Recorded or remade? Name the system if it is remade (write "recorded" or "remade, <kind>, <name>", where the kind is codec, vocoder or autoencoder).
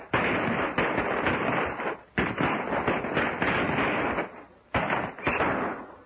recorded